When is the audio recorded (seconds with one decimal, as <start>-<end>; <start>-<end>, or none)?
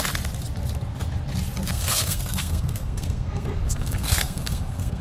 0.0-1.7